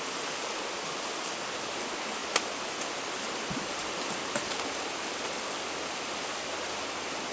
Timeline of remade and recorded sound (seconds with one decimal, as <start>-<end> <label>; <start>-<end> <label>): 0.0-7.3 recorded